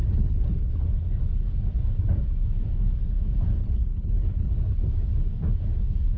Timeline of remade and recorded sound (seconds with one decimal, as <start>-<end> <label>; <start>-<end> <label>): 0.0-0.7 remade; 0.7-3.6 recorded; 3.6-4.5 remade; 4.5-6.2 recorded